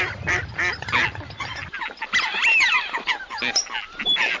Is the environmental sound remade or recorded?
recorded